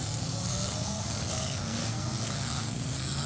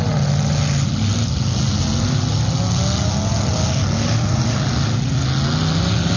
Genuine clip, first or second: second